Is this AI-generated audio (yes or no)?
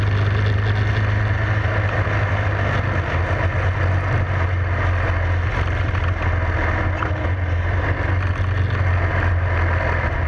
no